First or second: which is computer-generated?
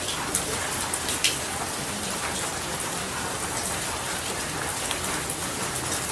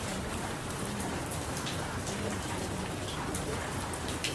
second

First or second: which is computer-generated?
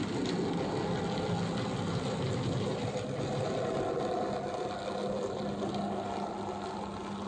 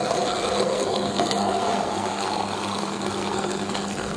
second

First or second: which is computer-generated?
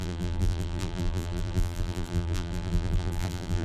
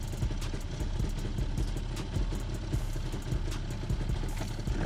first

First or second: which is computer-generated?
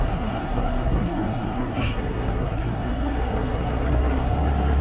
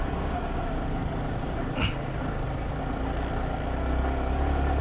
first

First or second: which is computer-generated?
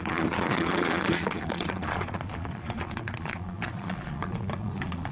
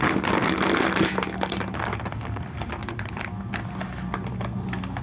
first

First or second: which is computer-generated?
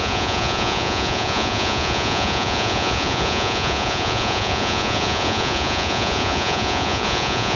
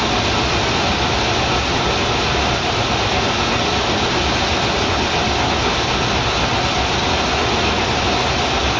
first